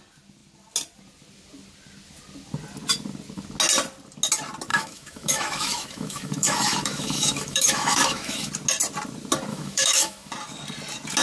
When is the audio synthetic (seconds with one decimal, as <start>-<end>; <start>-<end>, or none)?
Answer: 4.7-8.5; 9.5-10.3